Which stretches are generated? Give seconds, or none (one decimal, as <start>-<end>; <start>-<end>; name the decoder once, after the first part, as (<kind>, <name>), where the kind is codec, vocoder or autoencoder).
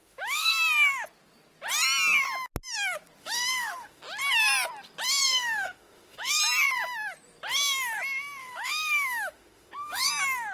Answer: 0.0-0.5 (autoencoder, DAC-VAE); 3.2-4.0; 5.2-6.4; 8.4-10.1